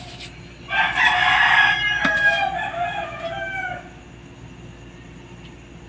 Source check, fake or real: real